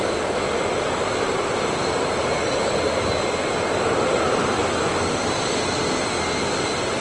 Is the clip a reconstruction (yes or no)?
no